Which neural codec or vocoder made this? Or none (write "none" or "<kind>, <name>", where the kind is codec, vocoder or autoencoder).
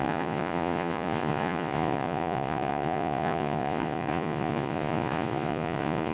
vocoder, Vocos